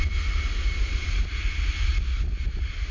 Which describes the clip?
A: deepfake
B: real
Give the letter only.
B